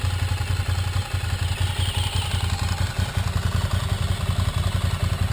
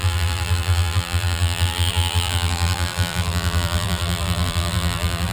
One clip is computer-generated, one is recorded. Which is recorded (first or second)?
first